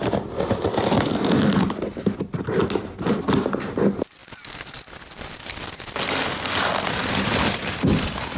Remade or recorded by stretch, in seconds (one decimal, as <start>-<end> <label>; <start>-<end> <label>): 0.0-8.4 recorded